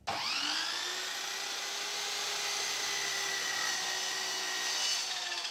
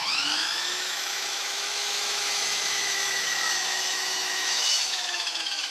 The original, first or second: first